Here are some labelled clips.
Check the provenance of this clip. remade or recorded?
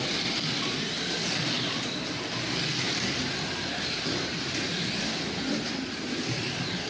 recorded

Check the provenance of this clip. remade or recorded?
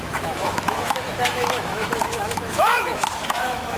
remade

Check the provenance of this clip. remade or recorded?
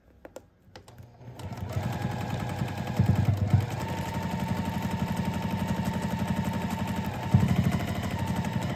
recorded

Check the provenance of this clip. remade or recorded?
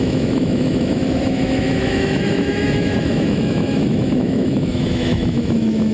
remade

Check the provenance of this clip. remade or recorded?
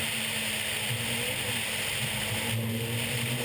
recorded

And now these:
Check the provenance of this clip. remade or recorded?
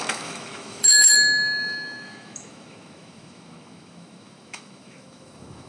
remade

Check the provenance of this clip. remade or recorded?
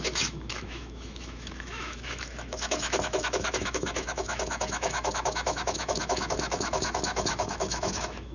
remade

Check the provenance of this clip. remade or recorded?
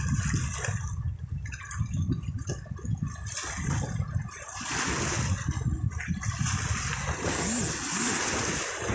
recorded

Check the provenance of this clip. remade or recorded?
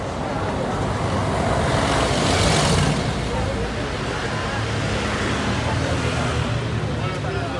recorded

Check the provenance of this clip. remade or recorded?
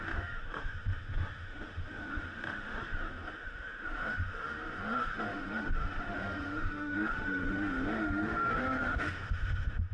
remade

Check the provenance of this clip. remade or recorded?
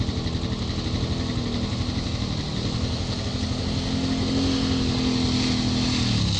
recorded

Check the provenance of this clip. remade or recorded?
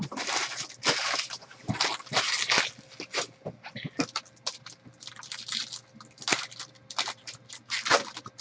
recorded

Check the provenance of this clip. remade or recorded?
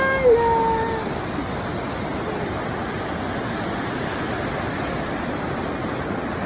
recorded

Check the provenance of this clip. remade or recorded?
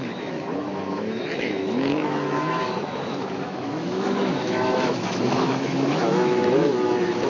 remade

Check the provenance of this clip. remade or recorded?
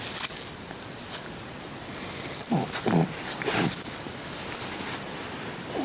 recorded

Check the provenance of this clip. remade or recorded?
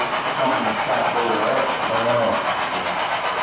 recorded